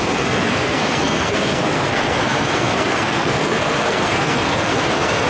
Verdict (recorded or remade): remade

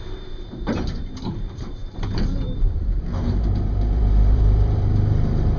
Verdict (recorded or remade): remade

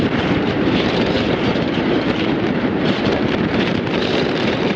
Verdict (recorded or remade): remade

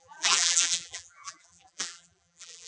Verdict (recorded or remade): remade